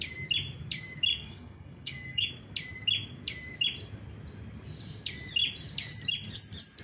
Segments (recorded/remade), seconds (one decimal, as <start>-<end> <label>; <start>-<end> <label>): 0.0-1.1 recorded; 1.1-2.3 remade; 2.3-6.8 recorded